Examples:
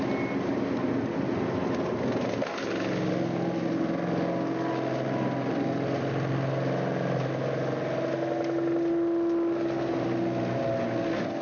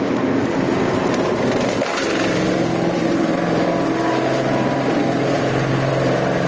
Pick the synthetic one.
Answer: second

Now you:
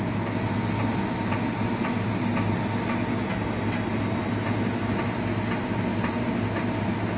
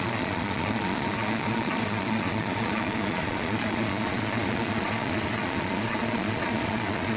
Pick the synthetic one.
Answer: second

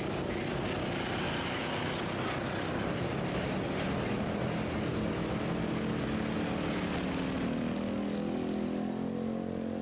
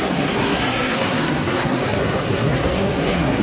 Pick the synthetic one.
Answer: second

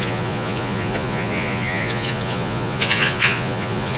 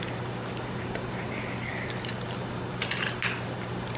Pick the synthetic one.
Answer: first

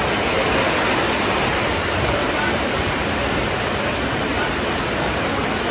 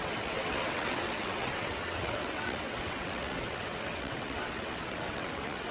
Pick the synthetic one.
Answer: second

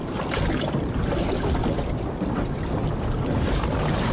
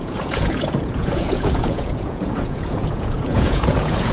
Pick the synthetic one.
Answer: second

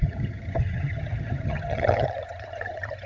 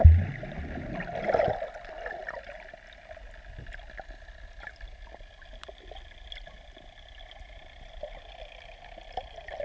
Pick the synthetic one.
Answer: first